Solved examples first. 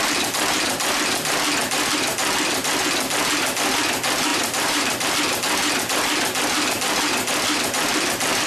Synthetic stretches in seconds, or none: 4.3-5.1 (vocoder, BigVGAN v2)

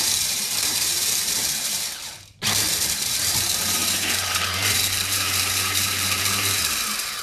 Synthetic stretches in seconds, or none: 0.0-7.2 (vocoder, BigVGAN v2)

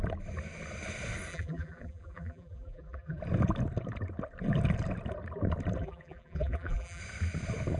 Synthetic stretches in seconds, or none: 1.3-3.2 (vocoder, BigVGAN v2); 5.8-7.0

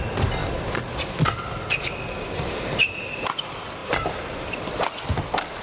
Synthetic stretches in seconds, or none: none